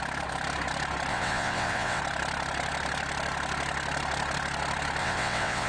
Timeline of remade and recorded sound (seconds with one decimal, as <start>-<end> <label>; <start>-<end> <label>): 0.0-1.1 recorded; 1.1-2.0 remade; 2.0-5.0 recorded; 5.0-5.7 remade